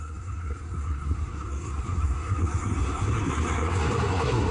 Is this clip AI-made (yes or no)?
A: yes